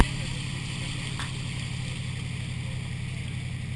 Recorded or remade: recorded